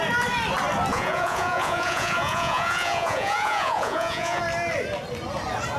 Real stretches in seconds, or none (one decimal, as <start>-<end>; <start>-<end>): 0.0-0.9; 4.4-5.8